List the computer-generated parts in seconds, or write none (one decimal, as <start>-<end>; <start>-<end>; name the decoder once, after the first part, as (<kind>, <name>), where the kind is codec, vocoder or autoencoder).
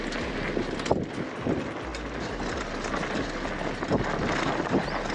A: none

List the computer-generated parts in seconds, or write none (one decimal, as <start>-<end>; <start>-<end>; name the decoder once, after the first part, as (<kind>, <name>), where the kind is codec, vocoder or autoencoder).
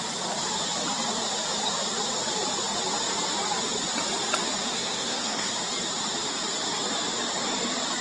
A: 4.7-5.5 (codec, SNAC)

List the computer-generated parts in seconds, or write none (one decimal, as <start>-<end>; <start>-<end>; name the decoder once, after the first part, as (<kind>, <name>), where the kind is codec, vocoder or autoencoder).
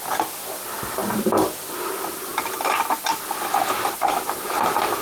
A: none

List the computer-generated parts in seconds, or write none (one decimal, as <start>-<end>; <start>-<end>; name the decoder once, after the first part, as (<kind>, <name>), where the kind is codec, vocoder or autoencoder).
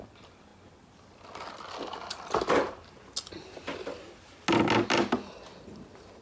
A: none